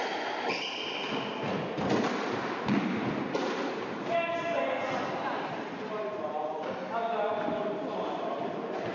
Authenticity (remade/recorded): recorded